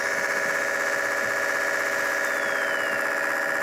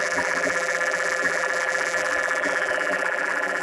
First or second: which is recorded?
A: first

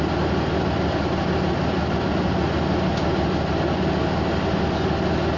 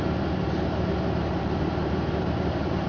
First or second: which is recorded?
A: first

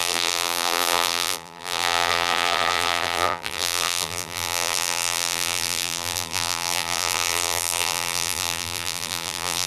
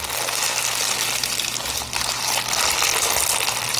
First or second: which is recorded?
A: second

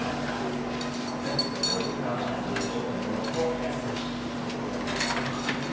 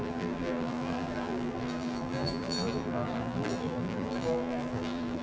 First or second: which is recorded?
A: first